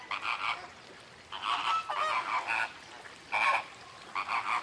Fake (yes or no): no